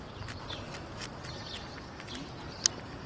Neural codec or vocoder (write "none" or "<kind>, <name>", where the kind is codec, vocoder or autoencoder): none